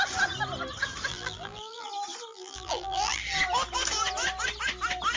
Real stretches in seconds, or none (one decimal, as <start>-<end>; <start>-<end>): 0.0-1.1; 1.9-2.3; 3.2-5.2